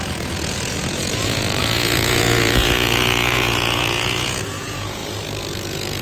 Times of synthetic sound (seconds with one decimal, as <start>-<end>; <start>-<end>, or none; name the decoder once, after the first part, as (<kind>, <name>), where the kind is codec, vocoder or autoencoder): 0.0-5.0 (vocoder, Vocos); 5.5-6.0